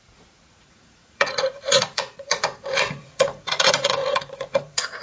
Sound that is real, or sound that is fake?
fake